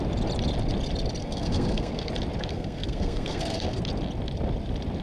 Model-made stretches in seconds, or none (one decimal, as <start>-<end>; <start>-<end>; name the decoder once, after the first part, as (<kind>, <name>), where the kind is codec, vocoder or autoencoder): 1.2-2.1 (codec, SNAC); 2.5-3.8